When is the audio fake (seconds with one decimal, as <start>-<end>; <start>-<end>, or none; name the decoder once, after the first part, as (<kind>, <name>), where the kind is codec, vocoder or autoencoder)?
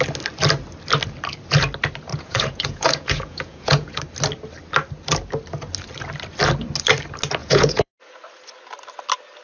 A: 2.1-4.0 (vocoder, Vocos); 7.4-7.9